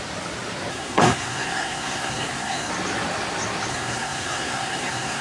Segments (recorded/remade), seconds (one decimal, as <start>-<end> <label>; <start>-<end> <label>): 0.0-0.7 recorded; 0.7-2.7 remade; 2.7-3.7 recorded; 3.7-5.2 remade